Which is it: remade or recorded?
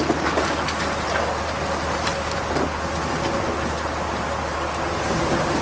recorded